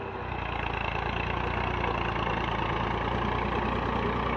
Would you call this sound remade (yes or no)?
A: no